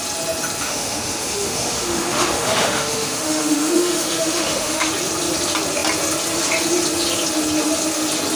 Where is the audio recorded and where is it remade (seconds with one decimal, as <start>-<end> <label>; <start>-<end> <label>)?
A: 0.0-0.6 recorded; 0.6-4.9 remade; 4.9-8.4 recorded